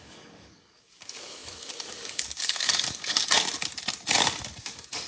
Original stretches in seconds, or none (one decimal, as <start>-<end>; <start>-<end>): 3.2-4.6